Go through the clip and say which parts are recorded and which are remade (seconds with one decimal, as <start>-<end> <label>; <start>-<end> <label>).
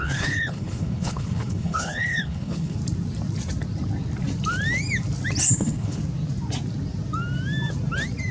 0.0-2.8 remade; 2.8-5.5 recorded; 5.5-6.0 remade; 6.0-8.3 recorded